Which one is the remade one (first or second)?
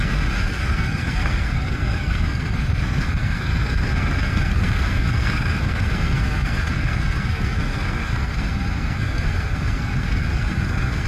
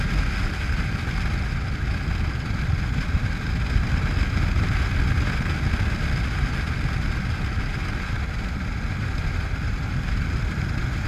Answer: first